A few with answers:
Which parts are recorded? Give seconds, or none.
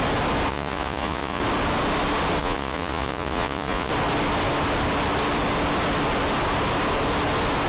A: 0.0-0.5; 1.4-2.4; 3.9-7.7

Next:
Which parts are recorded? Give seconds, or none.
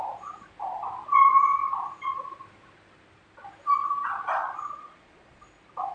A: 0.0-4.4; 5.4-5.9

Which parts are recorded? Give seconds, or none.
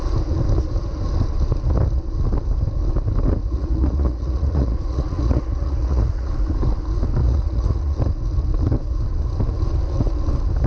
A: 0.0-3.4; 6.3-7.2; 8.0-10.7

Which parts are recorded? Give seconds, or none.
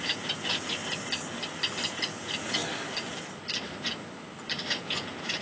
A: 0.8-1.9; 2.6-4.7